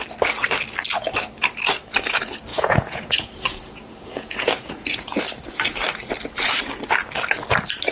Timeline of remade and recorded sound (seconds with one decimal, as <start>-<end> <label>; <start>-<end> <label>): 0.0-2.5 recorded; 2.5-5.2 remade; 5.2-7.9 recorded